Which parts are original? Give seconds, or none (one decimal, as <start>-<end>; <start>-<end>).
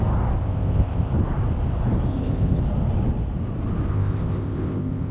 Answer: 0.0-0.4; 1.1-2.1; 2.6-3.9